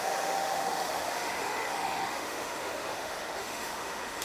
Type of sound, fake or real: fake